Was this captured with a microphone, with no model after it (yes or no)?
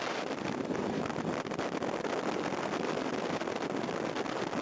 yes